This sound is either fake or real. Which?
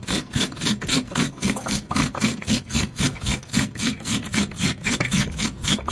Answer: fake